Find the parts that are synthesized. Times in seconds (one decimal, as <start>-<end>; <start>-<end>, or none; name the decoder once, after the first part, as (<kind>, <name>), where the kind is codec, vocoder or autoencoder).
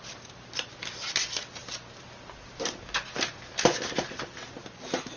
none